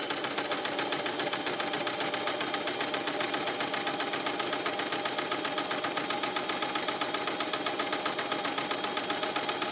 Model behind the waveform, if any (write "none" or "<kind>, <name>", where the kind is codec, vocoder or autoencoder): none